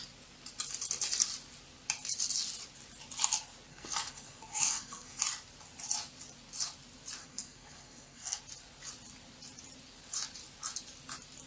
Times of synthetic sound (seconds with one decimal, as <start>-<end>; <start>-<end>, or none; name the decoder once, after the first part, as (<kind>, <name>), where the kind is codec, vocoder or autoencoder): 3.7-5.2 (codec, SNAC); 7.2-8.4